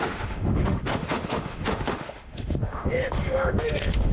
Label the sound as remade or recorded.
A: remade